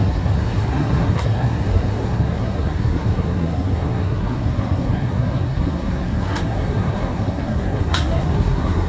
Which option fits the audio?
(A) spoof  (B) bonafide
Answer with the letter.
A